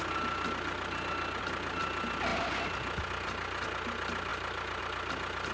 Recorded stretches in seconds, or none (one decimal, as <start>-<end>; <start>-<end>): 0.0-5.5